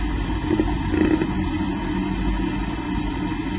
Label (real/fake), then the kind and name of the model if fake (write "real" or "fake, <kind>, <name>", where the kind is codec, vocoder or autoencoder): real